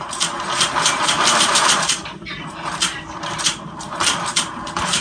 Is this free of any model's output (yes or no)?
no